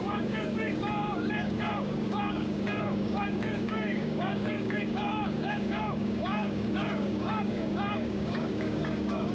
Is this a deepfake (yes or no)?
yes